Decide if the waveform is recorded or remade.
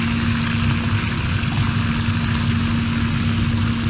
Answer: recorded